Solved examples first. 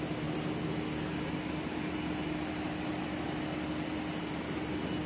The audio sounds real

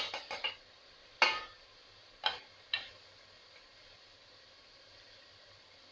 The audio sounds real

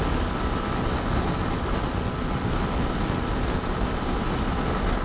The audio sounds real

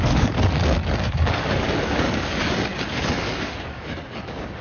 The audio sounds fake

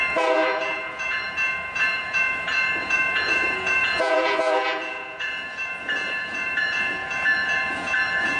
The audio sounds fake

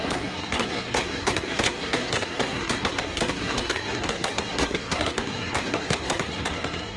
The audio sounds fake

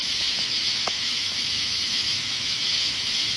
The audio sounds fake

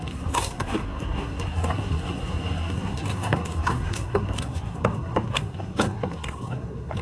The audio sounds fake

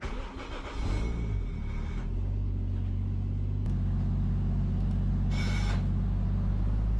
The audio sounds real